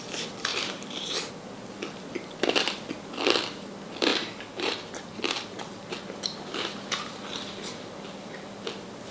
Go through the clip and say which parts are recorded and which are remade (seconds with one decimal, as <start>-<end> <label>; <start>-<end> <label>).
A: 0.0-0.5 recorded; 0.5-1.3 remade; 1.3-4.1 recorded; 4.1-5.9 remade; 5.9-9.1 recorded